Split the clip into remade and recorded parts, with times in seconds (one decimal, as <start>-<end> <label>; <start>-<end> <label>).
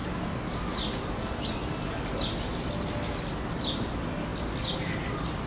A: 0.0-5.5 recorded